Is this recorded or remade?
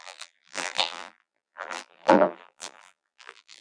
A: remade